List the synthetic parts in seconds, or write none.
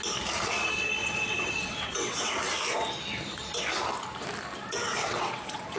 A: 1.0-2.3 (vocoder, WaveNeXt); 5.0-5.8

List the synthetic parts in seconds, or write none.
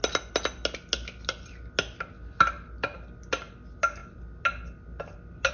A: none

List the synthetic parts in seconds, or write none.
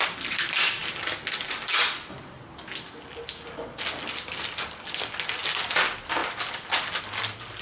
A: none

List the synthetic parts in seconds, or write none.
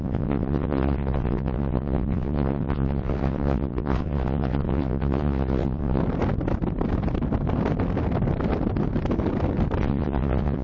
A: 0.0-6.0 (vocoder, WaveNeXt); 9.8-10.6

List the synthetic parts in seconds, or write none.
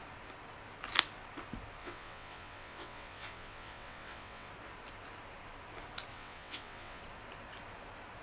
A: 1.8-4.5 (vocoder, WaveNeXt); 6.1-7.0